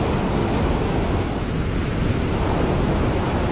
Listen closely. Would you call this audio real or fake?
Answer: real